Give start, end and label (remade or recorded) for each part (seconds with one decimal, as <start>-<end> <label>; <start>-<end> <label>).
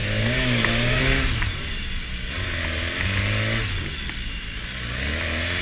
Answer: 0.0-1.0 remade; 1.0-5.6 recorded